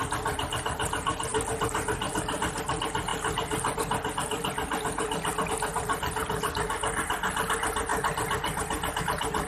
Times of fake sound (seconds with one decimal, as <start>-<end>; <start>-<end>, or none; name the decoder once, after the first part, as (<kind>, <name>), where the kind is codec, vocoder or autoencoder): none